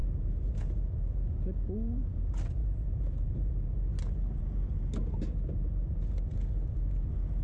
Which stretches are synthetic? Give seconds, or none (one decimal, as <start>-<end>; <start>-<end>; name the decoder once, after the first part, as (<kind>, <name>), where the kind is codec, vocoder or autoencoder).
0.0-0.5 (vocoder, BigVGAN v2); 2.6-3.5